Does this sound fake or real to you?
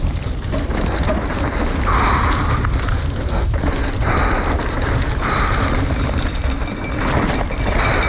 real